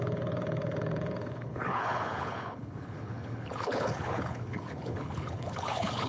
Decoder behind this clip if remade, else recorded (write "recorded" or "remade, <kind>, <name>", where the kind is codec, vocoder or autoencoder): remade, codec, HILCodec